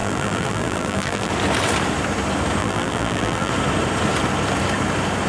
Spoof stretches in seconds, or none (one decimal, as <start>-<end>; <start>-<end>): 0.0-1.3; 2.6-3.5